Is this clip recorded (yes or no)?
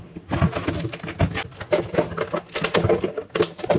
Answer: yes